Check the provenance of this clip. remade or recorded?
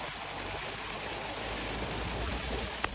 recorded